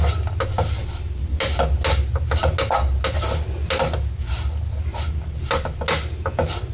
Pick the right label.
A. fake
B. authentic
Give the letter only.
B